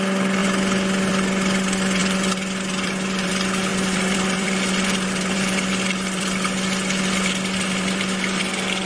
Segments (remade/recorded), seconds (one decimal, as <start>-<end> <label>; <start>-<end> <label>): 0.0-0.4 recorded; 0.4-1.1 remade; 1.1-2.0 recorded; 2.0-3.3 remade; 3.3-3.7 recorded; 3.7-8.4 remade; 8.4-8.9 recorded